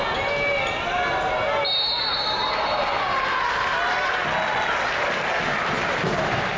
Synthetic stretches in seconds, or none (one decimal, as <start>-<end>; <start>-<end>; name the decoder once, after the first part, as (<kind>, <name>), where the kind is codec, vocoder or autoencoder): none